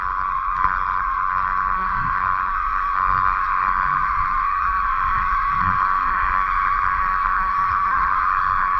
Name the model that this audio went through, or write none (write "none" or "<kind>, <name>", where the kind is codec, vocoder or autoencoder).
codec, SNAC